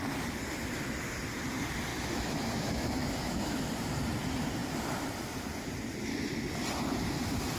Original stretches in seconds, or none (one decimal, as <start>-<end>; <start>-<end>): 0.0-1.9; 3.6-7.6

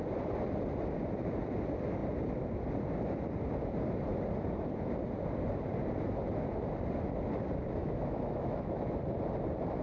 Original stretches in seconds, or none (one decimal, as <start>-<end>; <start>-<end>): 0.0-7.8; 9.0-9.8

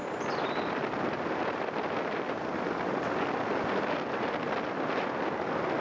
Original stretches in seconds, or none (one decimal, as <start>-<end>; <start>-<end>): 0.0-5.8

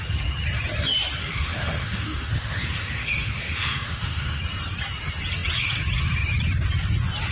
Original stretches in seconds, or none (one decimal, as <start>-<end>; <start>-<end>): 0.0-1.2; 4.4-7.3

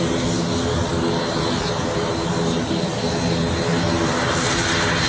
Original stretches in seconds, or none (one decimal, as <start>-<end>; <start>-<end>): 0.0-5.1

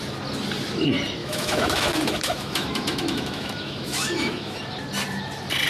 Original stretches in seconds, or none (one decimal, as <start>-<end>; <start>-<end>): 0.0-1.2; 4.6-5.7